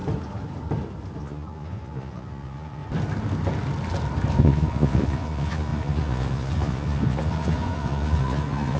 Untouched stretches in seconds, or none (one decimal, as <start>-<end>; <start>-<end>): 0.0-1.2; 2.8-4.4